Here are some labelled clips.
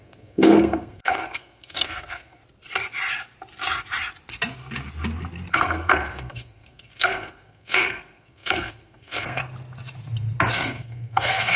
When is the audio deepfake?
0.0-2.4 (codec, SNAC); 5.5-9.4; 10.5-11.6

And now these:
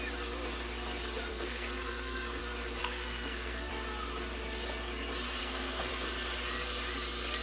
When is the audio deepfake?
1.3-2.4 (codec, SNAC); 2.8-3.7; 5.4-5.9

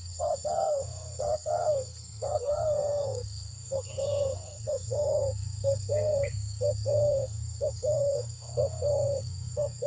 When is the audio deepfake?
0.0-9.9 (codec, SNAC)

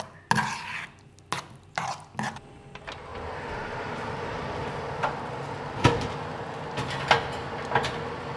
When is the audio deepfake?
3.1-6.1 (vocoder, BigVGAN v2)